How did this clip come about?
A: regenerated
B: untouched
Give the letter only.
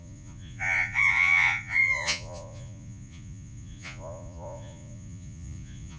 A